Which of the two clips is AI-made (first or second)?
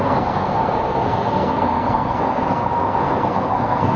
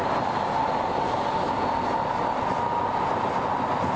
first